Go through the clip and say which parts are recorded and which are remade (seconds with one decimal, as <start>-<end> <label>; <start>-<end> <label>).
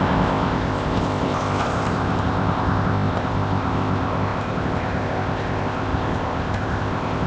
0.0-7.3 remade